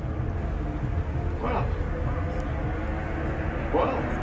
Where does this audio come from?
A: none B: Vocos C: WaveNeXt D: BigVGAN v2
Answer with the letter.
A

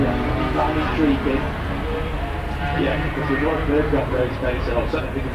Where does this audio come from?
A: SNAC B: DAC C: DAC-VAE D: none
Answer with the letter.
D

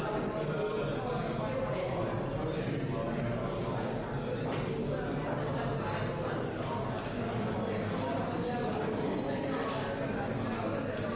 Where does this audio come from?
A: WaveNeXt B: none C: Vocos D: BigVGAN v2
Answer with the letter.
B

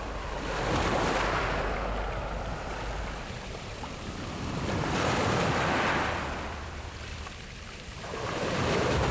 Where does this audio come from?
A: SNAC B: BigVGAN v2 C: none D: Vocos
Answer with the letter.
B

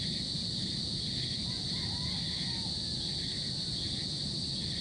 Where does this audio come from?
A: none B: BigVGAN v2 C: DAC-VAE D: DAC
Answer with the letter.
A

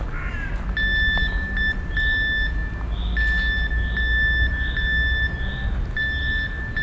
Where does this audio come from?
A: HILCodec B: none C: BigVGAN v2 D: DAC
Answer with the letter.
B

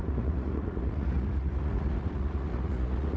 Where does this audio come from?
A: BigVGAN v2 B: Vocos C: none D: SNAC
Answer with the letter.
B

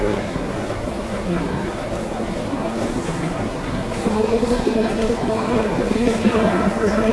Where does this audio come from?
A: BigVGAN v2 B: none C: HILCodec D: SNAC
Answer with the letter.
D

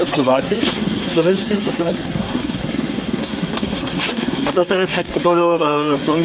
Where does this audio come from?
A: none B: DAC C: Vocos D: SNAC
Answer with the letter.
D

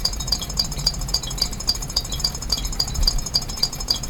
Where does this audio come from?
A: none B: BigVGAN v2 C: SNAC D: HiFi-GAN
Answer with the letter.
B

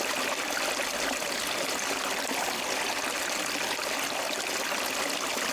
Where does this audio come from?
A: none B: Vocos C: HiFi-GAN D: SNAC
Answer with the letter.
A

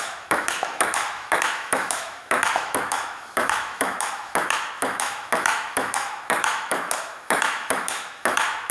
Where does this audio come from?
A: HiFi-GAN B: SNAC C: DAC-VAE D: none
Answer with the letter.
C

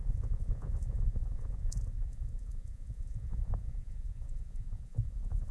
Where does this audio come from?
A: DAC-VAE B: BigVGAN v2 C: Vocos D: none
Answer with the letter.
C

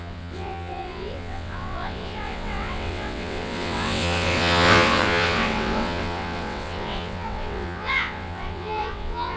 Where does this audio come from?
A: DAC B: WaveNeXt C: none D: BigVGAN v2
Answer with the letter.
B